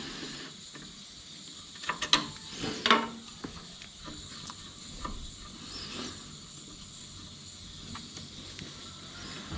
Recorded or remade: recorded